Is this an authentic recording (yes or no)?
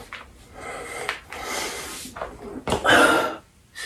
yes